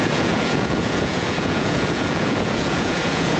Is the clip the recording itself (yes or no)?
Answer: no